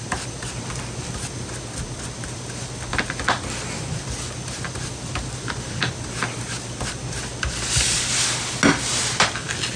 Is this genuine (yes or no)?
yes